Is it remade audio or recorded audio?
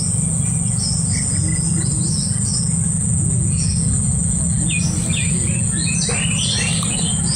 recorded